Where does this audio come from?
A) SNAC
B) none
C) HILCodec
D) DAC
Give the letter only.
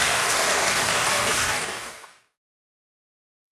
D